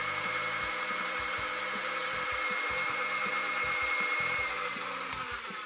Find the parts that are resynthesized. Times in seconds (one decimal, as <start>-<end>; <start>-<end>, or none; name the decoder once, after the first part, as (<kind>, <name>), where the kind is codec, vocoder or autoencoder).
0.0-5.7 (vocoder, BigVGAN v2)